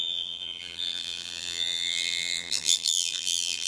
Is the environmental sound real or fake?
fake